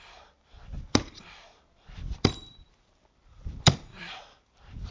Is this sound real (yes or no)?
no